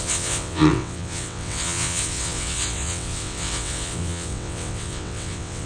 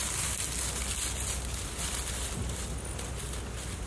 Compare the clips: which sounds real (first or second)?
second